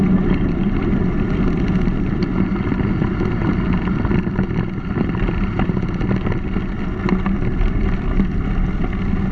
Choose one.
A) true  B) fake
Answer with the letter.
A